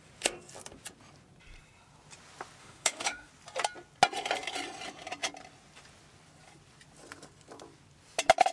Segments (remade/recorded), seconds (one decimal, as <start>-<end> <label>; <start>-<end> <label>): 0.0-2.6 recorded; 2.6-3.3 remade; 3.3-8.5 recorded